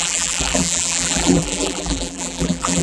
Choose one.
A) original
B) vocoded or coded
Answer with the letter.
B